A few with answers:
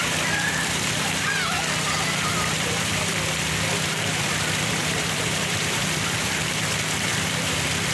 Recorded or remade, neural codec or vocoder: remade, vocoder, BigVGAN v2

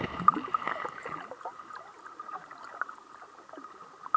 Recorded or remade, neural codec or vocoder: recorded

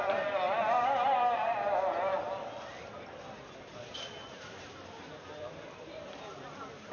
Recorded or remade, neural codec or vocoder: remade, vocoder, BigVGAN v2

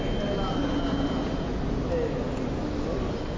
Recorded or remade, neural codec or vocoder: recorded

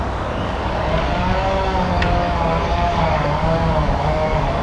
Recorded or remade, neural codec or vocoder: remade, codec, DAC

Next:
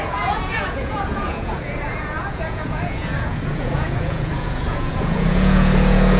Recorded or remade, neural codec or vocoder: remade, vocoder, Vocos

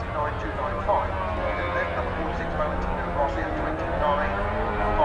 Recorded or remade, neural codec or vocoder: recorded